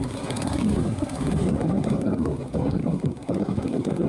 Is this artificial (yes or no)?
yes